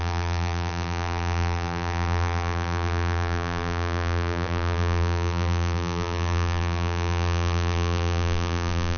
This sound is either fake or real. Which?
fake